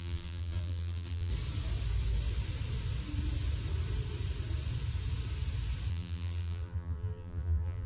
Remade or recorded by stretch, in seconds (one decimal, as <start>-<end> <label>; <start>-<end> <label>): 0.0-1.3 remade; 1.3-5.9 recorded; 5.9-7.9 remade